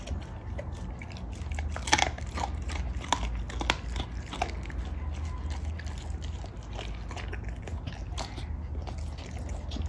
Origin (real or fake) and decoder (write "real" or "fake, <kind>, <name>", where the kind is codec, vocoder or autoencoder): real